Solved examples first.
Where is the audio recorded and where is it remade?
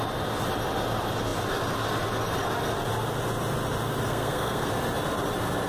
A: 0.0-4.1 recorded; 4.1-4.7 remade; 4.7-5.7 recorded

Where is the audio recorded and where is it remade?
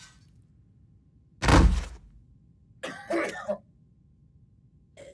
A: 0.0-5.1 recorded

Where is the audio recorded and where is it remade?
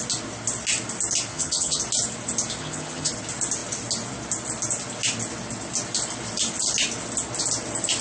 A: 0.0-1.3 recorded; 1.3-1.8 remade; 1.8-2.6 recorded; 2.6-3.1 remade; 3.1-8.0 recorded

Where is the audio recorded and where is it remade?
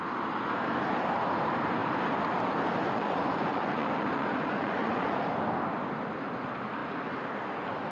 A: 0.0-2.8 recorded; 2.8-5.3 remade; 5.3-7.9 recorded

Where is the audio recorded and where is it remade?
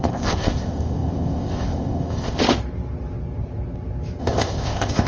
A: 0.0-2.4 remade; 2.4-4.2 recorded; 4.2-5.1 remade